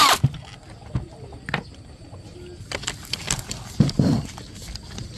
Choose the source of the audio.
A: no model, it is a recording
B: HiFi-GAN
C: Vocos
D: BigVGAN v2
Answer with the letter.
A